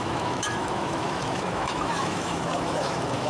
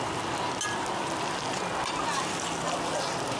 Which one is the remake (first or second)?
first